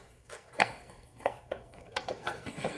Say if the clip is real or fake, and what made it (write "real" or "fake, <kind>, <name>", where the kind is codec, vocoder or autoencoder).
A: fake, codec, SNAC